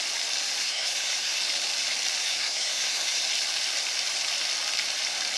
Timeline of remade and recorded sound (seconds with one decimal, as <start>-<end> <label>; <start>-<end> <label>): 0.0-0.6 recorded; 0.6-1.4 remade; 1.4-2.2 recorded; 2.2-3.2 remade; 3.2-5.4 recorded